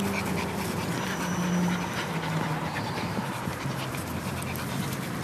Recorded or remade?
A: recorded